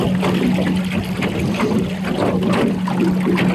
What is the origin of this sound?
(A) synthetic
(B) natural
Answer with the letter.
B